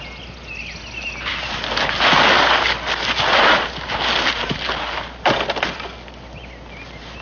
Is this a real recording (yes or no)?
yes